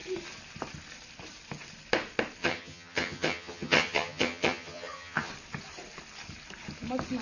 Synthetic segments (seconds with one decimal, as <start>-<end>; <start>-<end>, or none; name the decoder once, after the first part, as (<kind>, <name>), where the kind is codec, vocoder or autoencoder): 2.4-5.3 (vocoder, HiFi-GAN)